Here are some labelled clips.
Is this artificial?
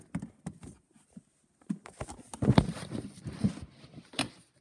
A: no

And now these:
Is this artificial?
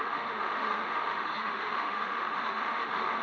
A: yes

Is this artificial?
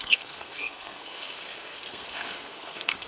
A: yes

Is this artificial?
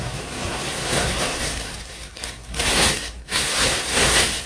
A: yes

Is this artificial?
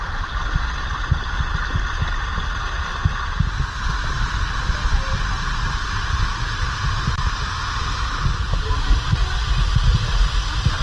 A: no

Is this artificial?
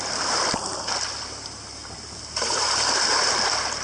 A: no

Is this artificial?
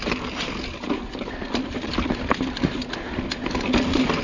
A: no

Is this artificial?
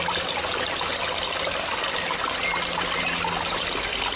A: no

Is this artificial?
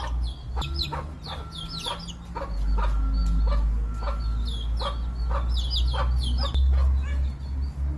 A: no